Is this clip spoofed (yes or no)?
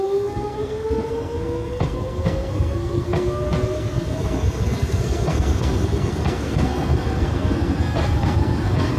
yes